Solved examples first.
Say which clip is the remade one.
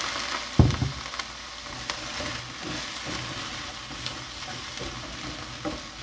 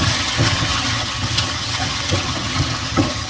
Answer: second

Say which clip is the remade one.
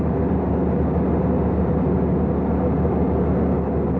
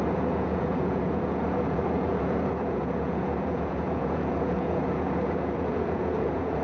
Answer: second